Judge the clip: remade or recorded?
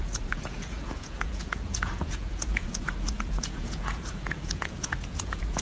remade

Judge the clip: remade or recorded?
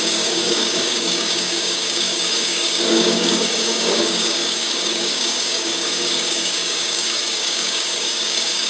remade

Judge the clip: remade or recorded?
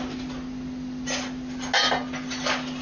recorded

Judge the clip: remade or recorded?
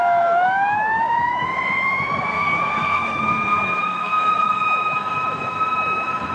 remade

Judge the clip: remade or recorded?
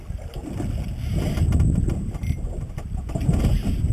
recorded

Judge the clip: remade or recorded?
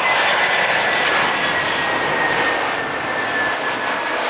recorded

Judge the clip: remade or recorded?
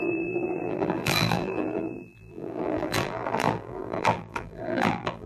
remade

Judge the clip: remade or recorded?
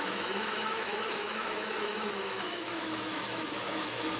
remade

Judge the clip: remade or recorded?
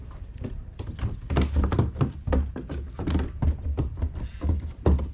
recorded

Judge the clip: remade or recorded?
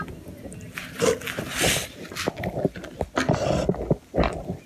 recorded